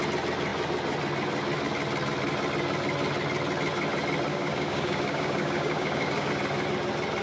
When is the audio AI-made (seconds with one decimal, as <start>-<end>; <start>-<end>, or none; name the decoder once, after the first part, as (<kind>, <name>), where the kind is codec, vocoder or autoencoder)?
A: 4.3-6.3 (codec, DAC)